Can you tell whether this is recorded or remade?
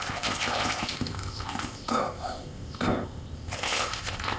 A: remade